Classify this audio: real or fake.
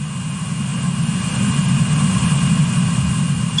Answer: real